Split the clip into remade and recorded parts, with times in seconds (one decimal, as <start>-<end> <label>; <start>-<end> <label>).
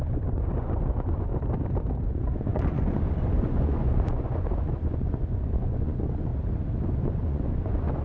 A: 0.0-1.3 remade; 1.3-2.1 recorded; 2.1-6.3 remade; 6.3-7.0 recorded; 7.0-8.0 remade